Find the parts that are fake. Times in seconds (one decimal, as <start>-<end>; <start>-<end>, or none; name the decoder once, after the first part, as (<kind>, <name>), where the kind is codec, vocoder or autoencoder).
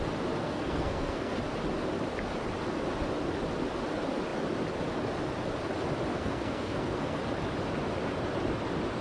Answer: 0.4-1.4 (codec, SNAC); 6.1-7.2